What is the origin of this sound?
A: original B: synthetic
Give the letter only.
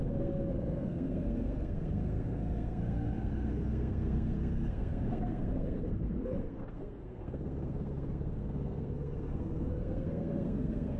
B